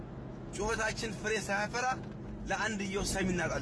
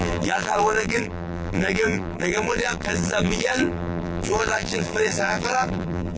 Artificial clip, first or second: second